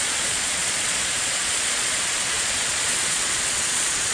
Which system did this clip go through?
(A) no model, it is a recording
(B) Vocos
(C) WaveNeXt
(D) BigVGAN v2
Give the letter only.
B